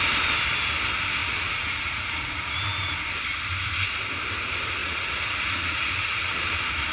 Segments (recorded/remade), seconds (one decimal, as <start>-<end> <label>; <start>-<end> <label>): 0.0-1.2 recorded; 1.2-2.5 remade; 2.5-4.8 recorded; 4.8-6.4 remade; 6.4-6.9 recorded